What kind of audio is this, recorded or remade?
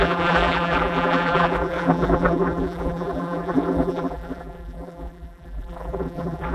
remade